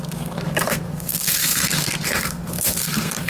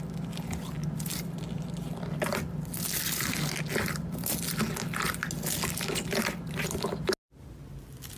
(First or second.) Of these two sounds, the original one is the second